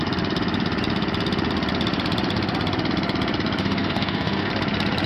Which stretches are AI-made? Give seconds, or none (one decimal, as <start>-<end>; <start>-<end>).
3.6-4.5